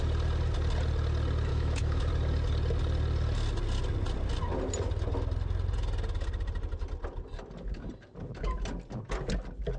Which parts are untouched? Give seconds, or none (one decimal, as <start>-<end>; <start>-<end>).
0.0-1.5; 2.1-9.8

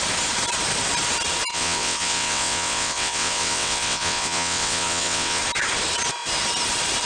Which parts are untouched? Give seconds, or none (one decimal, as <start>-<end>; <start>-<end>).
0.0-1.5; 5.4-7.1

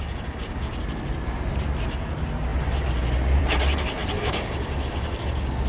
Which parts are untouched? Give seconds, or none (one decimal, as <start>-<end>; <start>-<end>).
0.8-4.2; 5.2-5.7